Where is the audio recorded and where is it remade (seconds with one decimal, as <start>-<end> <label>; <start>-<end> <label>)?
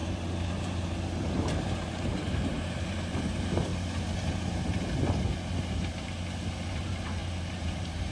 0.0-3.7 remade; 3.7-6.7 recorded; 6.7-8.1 remade